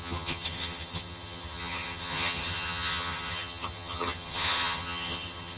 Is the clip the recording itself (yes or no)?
no